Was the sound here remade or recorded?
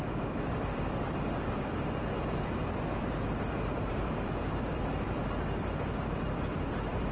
remade